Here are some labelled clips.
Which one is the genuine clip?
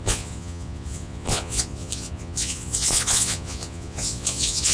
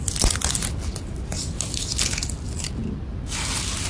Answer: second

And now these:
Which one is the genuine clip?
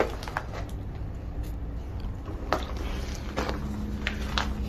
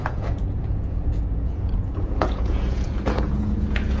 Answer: first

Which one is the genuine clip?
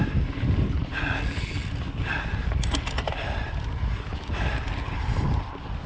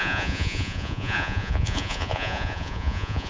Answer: first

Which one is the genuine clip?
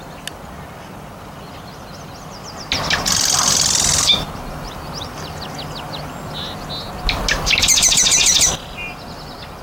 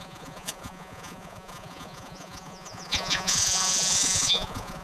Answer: first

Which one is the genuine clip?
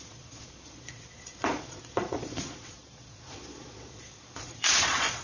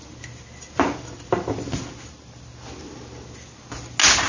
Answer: second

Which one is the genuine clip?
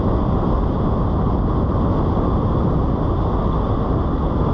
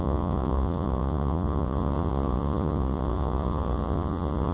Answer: first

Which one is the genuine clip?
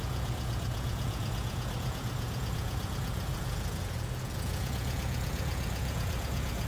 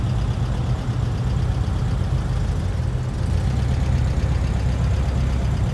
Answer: second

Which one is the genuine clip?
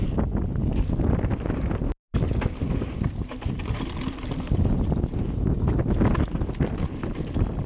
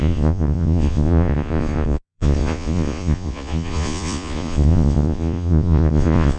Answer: first